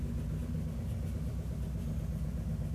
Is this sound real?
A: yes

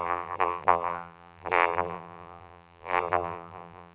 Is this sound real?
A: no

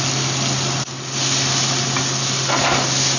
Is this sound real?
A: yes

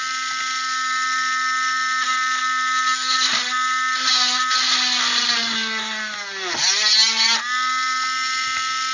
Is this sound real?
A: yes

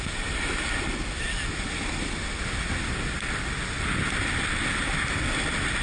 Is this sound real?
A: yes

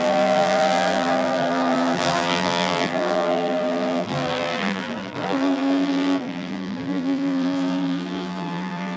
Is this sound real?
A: no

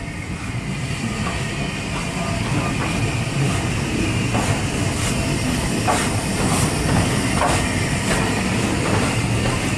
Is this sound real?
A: yes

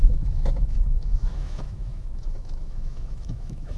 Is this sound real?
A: no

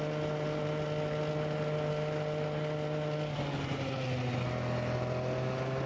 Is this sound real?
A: yes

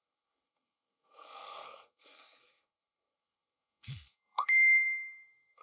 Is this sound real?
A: no